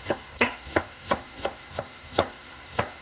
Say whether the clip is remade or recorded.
remade